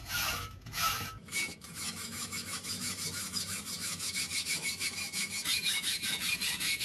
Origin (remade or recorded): remade